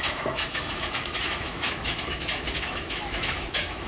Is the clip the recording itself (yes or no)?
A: no